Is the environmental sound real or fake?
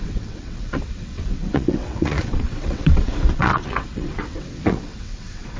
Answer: fake